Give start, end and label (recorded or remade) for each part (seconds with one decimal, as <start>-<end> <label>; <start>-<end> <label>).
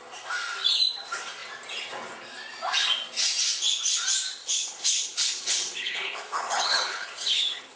0.0-4.4 recorded; 4.4-7.8 remade